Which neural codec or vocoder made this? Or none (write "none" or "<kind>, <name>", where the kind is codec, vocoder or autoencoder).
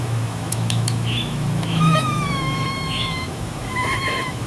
autoencoder, DAC-VAE